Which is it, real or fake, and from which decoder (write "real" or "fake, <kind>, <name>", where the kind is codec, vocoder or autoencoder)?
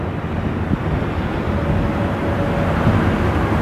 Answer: real